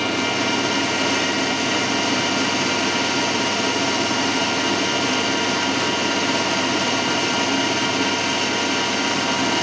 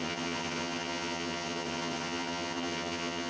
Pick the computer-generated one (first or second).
second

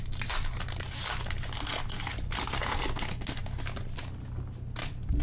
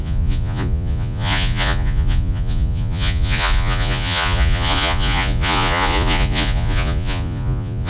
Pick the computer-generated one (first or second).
second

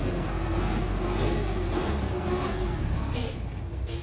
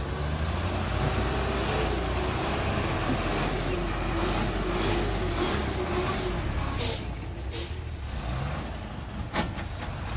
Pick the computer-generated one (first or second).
first